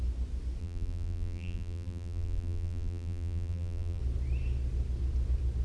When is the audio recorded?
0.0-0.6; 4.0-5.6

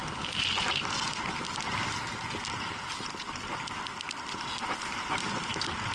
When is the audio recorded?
0.0-5.9